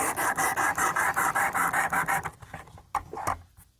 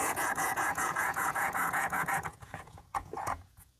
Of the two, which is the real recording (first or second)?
first